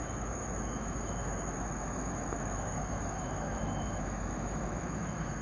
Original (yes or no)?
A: no